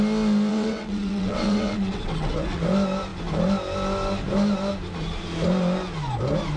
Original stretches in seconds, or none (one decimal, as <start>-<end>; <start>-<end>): 0.0-0.5; 2.6-6.6